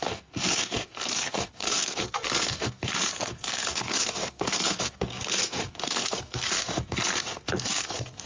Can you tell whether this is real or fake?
fake